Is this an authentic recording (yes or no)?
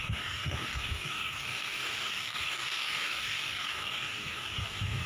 no